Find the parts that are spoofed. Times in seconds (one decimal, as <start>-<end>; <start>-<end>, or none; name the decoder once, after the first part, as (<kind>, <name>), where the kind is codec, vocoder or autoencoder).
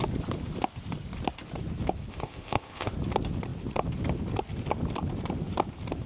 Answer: 2.1-2.9 (codec, ZipCodec)